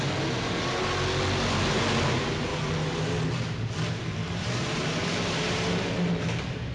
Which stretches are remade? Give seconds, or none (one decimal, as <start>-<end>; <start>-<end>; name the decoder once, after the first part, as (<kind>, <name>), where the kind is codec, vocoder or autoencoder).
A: 2.5-3.0 (vocoder, BigVGAN v2); 4.2-6.1